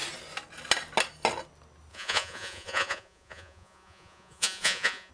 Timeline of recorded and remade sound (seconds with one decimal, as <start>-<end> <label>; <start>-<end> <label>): 0.0-1.9 recorded; 1.9-5.1 remade